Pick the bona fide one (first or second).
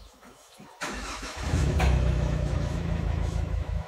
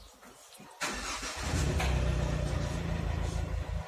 second